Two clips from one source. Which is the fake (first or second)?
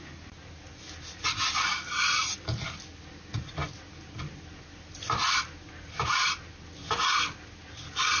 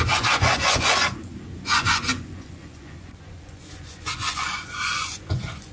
second